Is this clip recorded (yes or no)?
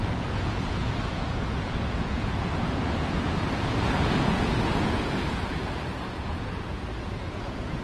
no